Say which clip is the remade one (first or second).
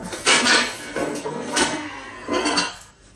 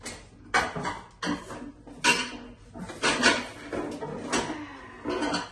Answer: first